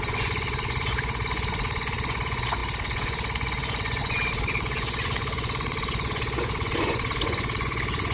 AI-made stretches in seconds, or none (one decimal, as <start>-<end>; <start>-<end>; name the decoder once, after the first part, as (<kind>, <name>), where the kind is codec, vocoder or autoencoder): 0.0-8.1 (vocoder, Vocos)